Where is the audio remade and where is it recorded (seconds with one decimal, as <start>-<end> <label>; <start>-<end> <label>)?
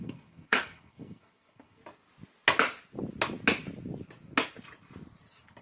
0.0-1.8 remade; 1.8-5.6 recorded